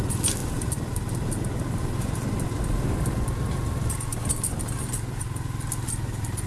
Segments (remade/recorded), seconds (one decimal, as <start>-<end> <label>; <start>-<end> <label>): 0.0-6.5 recorded